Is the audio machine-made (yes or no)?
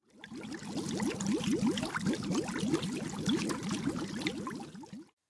no